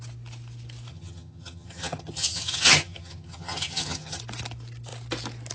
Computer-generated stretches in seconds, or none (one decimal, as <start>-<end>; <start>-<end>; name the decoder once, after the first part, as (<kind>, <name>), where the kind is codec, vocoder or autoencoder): 0.9-4.2 (vocoder, HiFi-GAN)